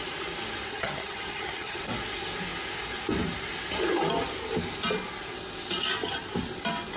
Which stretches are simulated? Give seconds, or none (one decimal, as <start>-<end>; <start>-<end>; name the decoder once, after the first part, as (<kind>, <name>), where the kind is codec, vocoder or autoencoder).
0.7-1.8 (vocoder, HiFi-GAN)